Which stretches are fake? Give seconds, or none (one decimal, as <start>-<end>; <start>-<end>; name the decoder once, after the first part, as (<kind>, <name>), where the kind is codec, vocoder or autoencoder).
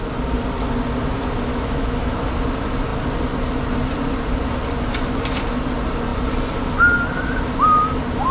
1.5-2.2 (autoencoder, DAC-VAE)